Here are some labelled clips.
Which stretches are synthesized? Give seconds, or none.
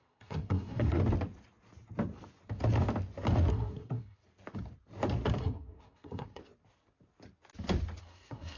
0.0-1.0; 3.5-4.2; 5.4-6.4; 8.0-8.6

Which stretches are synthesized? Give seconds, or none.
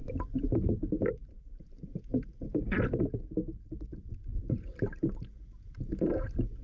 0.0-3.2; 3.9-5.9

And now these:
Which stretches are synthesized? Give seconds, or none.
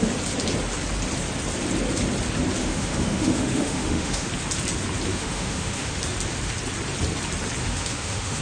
2.6-4.3; 5.1-6.0; 7.6-8.4